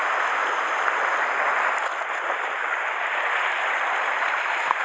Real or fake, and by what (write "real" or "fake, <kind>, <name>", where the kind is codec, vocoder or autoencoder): real